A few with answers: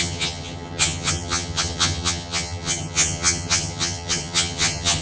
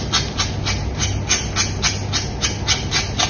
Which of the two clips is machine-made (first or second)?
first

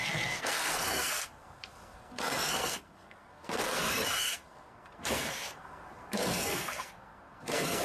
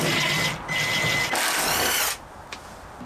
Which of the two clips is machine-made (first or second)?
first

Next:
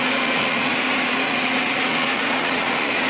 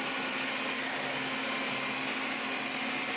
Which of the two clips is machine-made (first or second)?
first